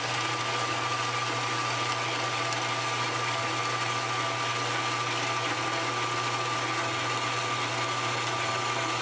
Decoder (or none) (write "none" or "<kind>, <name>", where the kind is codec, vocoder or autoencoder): none